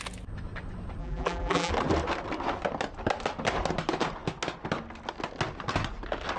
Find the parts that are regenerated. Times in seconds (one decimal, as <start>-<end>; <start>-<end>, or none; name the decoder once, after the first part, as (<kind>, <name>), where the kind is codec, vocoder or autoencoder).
1.0-1.7 (vocoder, BigVGAN v2)